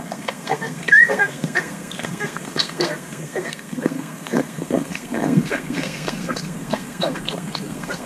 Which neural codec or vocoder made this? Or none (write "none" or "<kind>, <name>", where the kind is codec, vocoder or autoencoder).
codec, SNAC